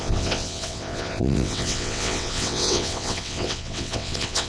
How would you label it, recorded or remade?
remade